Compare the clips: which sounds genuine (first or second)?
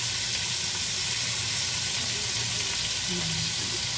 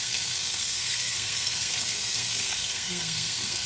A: first